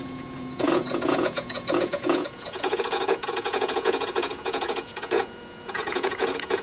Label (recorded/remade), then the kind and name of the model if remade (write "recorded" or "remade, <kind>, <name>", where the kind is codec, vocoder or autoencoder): remade, vocoder, Vocos